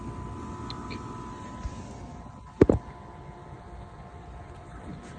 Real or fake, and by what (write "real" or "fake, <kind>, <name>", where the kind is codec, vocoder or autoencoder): real